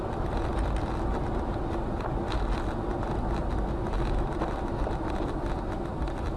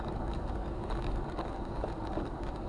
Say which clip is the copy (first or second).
second